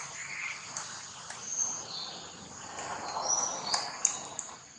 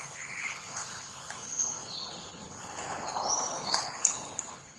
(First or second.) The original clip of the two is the first